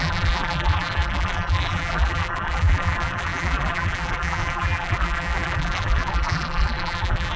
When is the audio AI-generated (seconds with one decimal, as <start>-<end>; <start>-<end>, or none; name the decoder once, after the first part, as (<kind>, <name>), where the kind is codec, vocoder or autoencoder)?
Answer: 0.0-7.4 (vocoder, BigVGAN v2)